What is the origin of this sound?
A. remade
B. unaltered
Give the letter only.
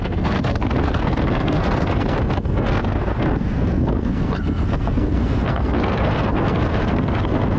A